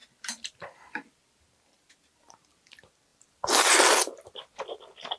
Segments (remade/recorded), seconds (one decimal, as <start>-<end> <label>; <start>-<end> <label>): 0.0-3.1 recorded; 3.1-4.8 remade; 4.8-5.2 recorded